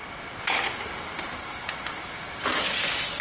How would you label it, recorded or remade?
recorded